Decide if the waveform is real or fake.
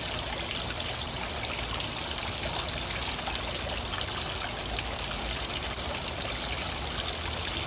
real